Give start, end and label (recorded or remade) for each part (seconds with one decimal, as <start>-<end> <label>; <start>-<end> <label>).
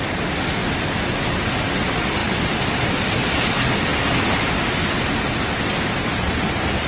0.0-0.6 recorded; 0.6-1.5 remade; 1.5-2.2 recorded; 2.2-2.8 remade; 2.8-6.1 recorded; 6.1-6.9 remade